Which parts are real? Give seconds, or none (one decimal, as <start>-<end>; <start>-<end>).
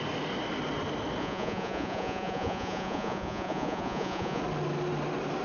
0.0-1.2; 4.4-5.4